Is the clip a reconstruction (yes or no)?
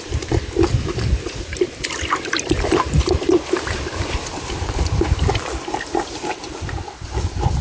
yes